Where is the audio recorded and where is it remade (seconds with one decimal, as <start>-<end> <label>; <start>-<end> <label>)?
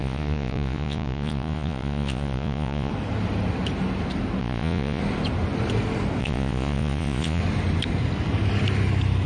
0.0-2.9 remade; 2.9-4.4 recorded; 4.4-5.0 remade; 5.0-6.2 recorded; 6.2-7.4 remade; 7.4-9.3 recorded